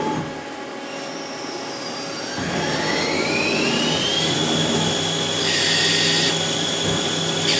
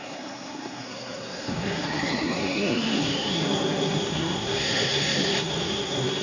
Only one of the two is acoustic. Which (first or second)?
first